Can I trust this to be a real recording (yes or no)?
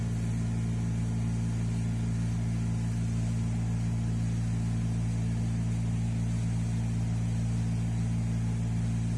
yes